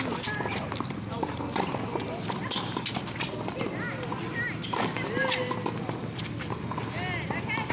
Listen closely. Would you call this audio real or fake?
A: real